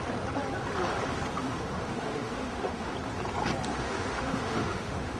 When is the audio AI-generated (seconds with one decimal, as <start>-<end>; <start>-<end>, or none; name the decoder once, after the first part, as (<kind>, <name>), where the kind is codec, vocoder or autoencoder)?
1.4-2.9 (autoencoder, DAC-VAE); 3.7-5.2